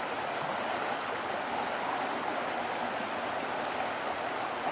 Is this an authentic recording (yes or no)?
yes